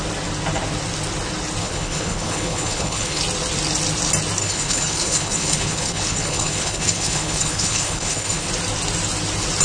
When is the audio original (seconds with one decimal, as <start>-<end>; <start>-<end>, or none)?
0.0-1.6; 3.2-4.4; 8.5-9.6